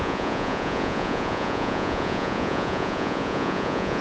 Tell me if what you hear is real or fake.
fake